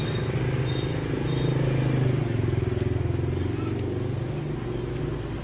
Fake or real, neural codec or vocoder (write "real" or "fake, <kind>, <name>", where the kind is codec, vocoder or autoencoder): real